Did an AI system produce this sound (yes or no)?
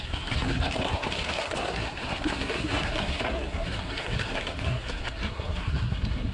yes